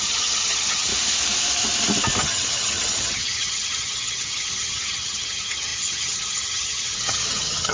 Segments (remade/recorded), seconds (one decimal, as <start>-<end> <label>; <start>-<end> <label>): 0.0-0.9 remade; 0.9-2.2 recorded; 2.2-7.7 remade